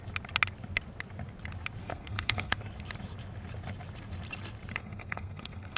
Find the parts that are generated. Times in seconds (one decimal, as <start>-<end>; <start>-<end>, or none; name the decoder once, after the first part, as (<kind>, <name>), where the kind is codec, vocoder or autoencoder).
1.8-2.6 (codec, SNAC); 4.8-5.8